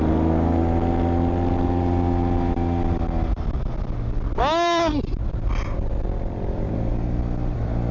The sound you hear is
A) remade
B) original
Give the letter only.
B